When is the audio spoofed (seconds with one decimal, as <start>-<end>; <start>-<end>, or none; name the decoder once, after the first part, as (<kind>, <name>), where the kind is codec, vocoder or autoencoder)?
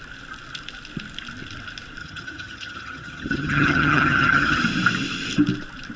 2.0-4.6 (vocoder, HiFi-GAN)